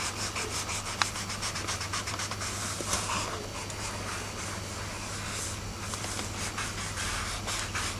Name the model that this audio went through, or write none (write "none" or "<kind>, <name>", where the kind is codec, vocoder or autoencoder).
none